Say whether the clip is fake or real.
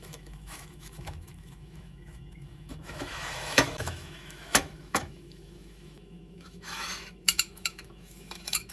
fake